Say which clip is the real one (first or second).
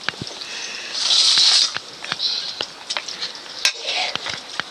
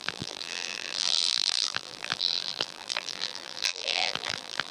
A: first